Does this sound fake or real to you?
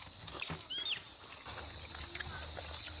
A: real